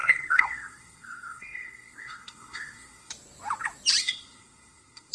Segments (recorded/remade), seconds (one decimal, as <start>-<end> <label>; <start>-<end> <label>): 0.0-3.1 remade; 3.1-4.0 recorded; 4.0-5.1 remade